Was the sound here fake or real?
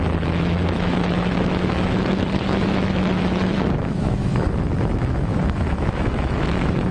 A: fake